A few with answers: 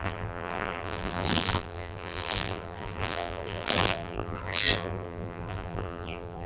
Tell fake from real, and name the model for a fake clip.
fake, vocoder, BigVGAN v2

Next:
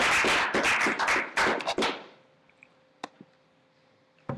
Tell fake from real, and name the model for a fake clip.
real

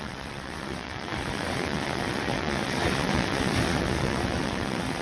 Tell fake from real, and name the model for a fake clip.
fake, vocoder, WaveNeXt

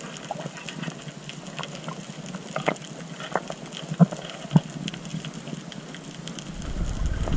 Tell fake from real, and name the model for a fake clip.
real